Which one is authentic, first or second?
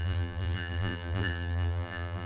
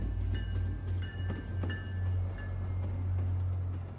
second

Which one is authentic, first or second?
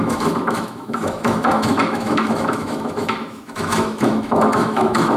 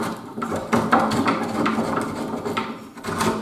second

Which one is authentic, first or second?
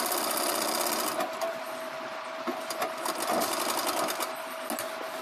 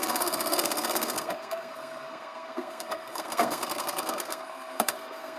first